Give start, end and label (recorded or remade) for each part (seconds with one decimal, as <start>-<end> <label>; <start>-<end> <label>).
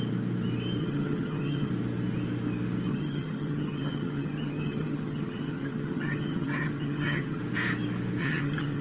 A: 0.0-0.8 recorded; 0.8-1.7 remade; 1.7-2.9 recorded; 2.9-7.4 remade; 7.4-8.2 recorded; 8.2-8.8 remade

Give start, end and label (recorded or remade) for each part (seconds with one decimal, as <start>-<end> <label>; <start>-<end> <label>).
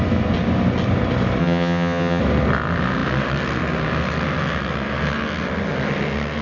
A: 0.0-1.4 recorded; 1.4-2.2 remade; 2.2-6.4 recorded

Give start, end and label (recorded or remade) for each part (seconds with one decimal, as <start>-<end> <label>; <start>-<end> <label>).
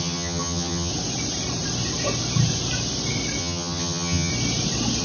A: 0.0-0.9 remade; 0.9-3.4 recorded; 3.4-4.3 remade; 4.3-5.0 recorded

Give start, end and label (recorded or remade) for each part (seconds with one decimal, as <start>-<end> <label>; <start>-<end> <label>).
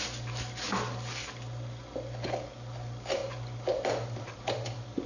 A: 0.0-5.1 recorded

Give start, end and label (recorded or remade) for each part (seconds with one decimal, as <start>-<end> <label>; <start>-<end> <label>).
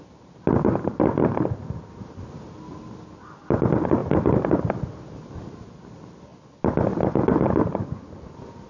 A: 0.0-8.7 recorded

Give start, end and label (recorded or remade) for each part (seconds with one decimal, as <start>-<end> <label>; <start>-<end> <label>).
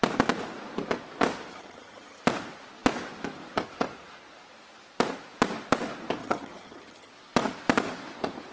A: 0.0-1.5 recorded; 1.5-2.2 remade; 2.2-6.2 recorded; 6.2-7.1 remade; 7.1-8.5 recorded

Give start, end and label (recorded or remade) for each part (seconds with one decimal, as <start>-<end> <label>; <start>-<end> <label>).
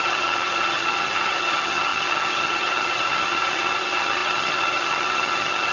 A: 0.0-5.7 remade